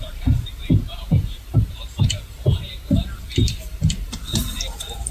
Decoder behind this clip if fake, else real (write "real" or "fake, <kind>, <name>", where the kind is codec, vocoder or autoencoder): fake, vocoder, BigVGAN v2